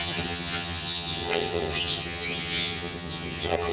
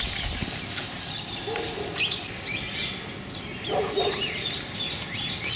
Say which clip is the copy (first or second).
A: first